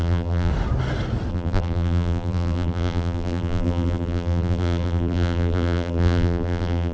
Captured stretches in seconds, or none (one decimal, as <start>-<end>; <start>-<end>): 0.5-1.3